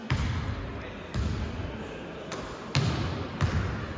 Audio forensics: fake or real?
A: real